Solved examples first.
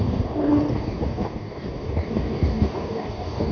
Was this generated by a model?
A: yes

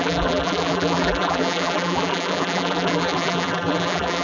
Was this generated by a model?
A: yes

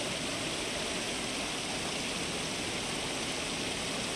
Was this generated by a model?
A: no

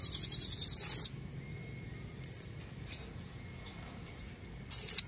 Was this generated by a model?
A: no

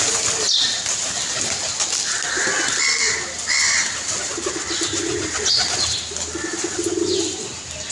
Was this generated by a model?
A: no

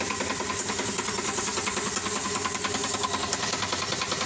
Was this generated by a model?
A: no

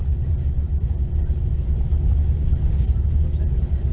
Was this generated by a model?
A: no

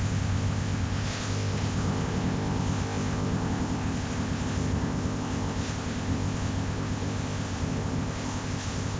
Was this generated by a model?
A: yes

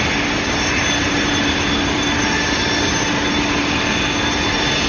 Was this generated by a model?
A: no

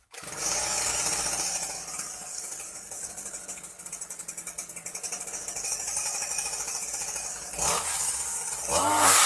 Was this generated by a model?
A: yes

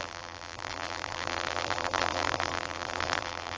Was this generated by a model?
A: yes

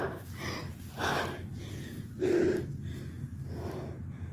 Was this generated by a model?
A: no